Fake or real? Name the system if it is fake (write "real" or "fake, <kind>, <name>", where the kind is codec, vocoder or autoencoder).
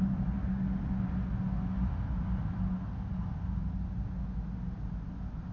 real